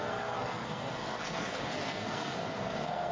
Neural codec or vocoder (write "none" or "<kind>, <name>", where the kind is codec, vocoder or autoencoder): codec, SNAC